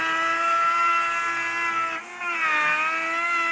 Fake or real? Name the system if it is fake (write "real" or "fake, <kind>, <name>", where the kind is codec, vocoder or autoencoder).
real